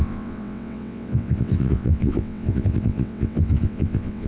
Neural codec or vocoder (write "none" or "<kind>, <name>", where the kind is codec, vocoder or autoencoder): vocoder, WaveNeXt